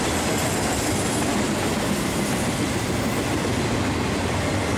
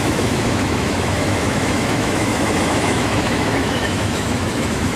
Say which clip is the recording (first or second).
first